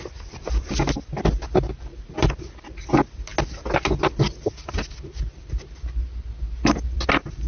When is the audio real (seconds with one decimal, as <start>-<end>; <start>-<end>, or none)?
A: 0.0-7.5